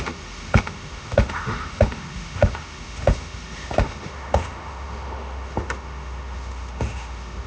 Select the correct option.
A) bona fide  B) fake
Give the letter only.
B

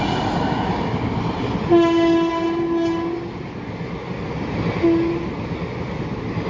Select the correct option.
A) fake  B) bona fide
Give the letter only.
B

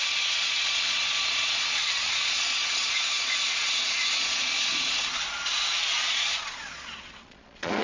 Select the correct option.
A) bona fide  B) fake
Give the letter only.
B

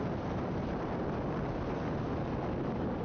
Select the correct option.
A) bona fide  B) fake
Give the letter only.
A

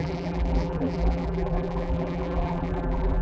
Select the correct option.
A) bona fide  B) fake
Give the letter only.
B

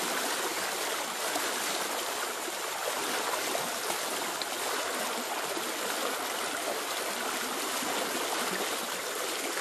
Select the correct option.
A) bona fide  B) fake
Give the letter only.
A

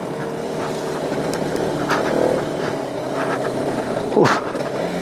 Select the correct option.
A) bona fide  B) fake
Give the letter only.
A